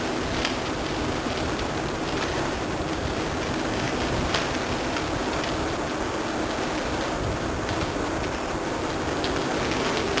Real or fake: real